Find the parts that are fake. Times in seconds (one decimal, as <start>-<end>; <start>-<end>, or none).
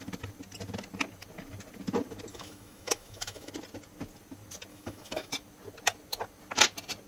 2.3-3.5; 4.7-5.3